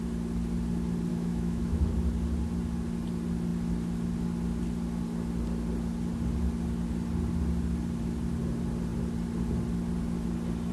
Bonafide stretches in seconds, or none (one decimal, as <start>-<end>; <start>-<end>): 0.0-1.1; 1.8-10.7